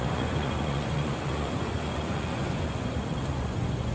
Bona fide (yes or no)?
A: no